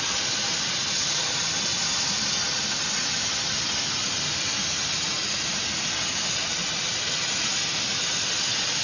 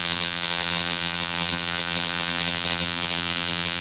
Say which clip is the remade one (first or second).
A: second